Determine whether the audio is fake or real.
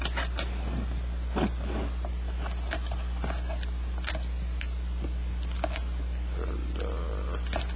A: real